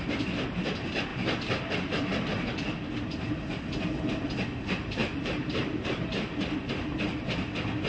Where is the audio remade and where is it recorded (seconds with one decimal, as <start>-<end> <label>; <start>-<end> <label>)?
0.0-5.0 recorded; 5.0-6.7 remade; 6.7-7.9 recorded